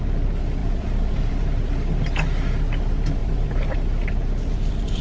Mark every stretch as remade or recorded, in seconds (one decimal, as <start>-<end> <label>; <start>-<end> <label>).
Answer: 0.0-0.6 recorded; 0.6-1.3 remade; 1.3-3.2 recorded; 3.2-5.0 remade